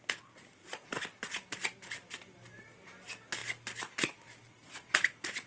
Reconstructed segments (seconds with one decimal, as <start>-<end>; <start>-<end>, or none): none